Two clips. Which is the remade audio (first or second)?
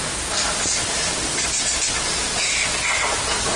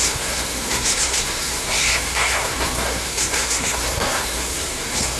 second